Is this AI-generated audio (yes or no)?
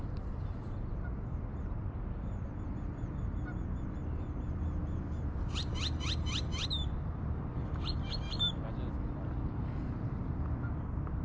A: no